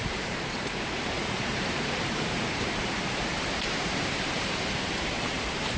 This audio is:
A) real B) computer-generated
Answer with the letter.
B